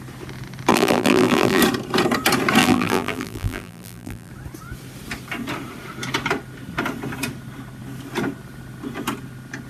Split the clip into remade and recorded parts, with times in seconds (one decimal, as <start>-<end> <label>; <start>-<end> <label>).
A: 0.0-0.7 recorded; 0.7-1.6 remade; 1.6-2.6 recorded; 2.6-4.3 remade; 4.3-9.7 recorded